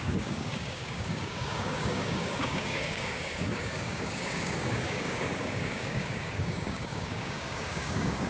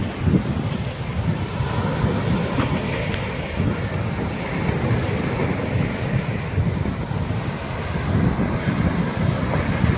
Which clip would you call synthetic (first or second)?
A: first